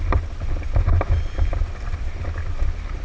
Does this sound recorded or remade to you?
recorded